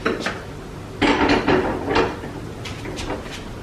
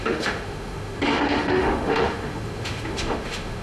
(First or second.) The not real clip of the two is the second